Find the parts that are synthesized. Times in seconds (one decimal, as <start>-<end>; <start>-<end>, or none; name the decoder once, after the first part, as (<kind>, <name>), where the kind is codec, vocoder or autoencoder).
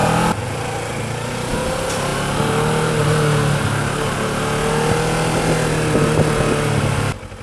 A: none